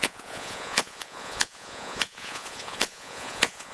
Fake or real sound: fake